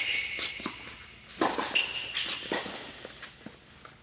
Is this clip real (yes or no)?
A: yes